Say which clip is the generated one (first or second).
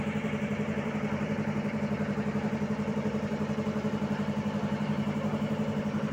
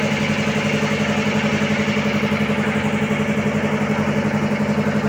first